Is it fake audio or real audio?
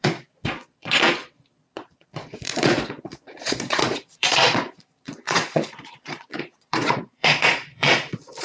fake